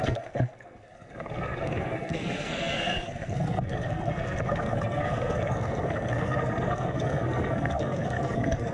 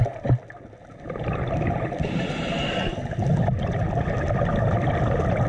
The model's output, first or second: first